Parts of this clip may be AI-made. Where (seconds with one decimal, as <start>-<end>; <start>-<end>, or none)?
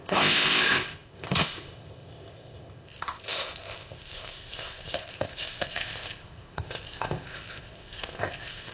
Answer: 0.0-8.7